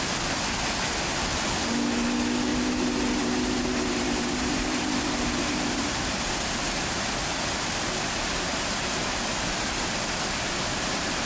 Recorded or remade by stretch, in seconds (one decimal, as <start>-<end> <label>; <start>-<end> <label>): 0.0-2.5 recorded; 2.5-6.3 remade; 6.3-11.3 recorded

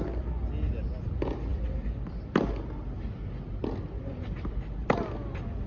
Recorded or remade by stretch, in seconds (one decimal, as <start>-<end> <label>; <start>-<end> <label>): 0.0-4.8 recorded; 4.8-5.7 remade